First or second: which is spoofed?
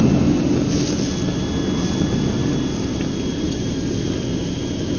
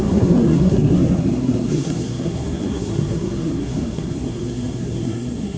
second